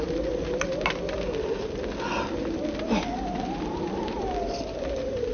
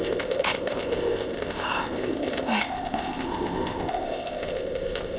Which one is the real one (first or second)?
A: first